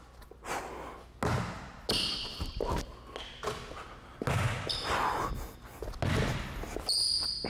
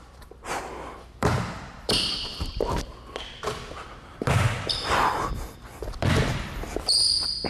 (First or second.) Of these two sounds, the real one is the first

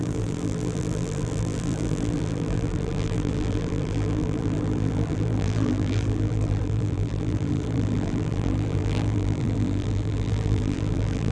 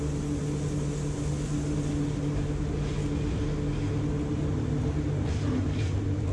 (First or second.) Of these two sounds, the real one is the second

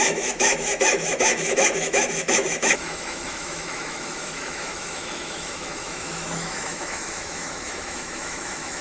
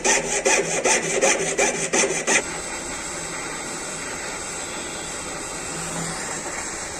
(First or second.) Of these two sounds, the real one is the second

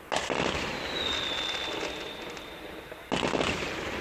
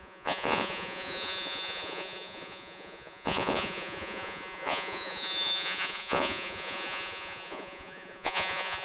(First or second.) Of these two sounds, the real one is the first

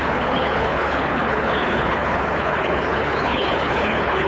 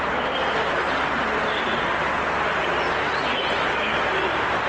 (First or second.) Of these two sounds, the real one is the second